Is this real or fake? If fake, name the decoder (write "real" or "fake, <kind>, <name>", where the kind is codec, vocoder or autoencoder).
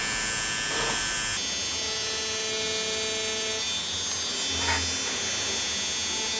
real